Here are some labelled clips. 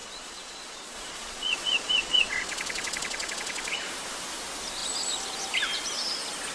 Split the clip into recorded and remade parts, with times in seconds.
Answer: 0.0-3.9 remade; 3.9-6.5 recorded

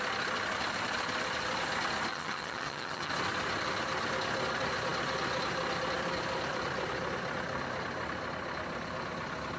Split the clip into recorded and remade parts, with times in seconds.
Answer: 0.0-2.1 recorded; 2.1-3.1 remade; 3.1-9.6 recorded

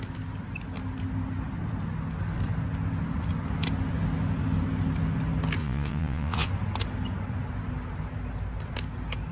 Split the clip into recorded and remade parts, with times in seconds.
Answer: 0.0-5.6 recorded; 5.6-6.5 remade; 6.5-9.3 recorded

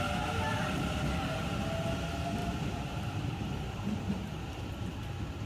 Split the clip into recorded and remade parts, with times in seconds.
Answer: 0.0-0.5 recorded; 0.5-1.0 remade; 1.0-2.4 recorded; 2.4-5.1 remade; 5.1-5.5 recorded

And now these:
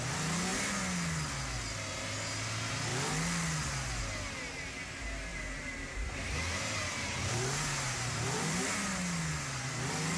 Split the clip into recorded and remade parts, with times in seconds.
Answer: 0.0-5.3 recorded; 5.3-8.6 remade; 8.6-10.2 recorded

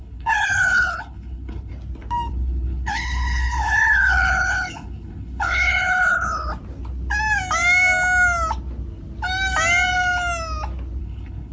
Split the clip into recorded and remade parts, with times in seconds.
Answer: 0.0-1.7 remade; 1.7-2.3 recorded; 2.3-6.5 remade; 6.5-11.0 recorded; 11.0-11.5 remade

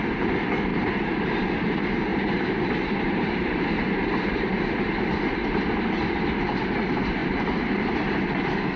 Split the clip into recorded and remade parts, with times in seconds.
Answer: 0.0-0.7 recorded; 0.7-1.4 remade; 1.4-2.1 recorded; 2.1-5.2 remade; 5.2-7.2 recorded; 7.2-8.0 remade; 8.0-8.8 recorded

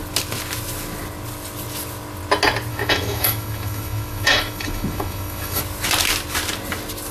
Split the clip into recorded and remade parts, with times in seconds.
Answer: 0.0-2.7 recorded; 2.7-5.6 remade; 5.6-7.1 recorded